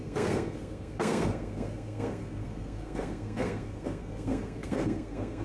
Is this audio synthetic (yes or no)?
yes